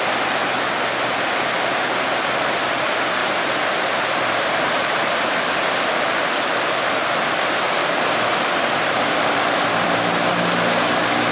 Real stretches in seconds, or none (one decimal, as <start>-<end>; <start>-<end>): 0.0-3.2; 5.1-7.8; 9.0-11.3